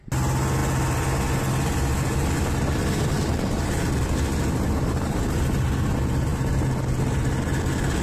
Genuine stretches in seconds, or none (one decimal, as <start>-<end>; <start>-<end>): 0.0-8.0